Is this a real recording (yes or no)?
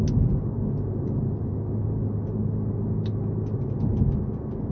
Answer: yes